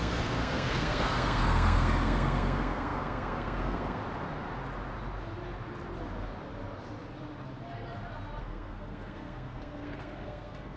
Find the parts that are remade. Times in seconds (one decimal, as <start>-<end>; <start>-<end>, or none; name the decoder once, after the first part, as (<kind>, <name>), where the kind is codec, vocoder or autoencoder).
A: 0.0-4.0 (codec, SNAC); 8.4-10.8